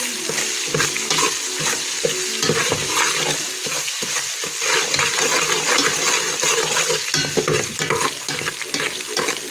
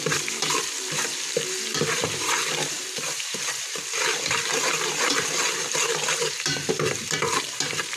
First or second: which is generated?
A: second